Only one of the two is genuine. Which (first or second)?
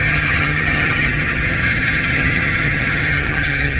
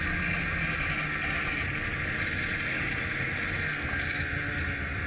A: second